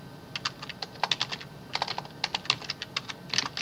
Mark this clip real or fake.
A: real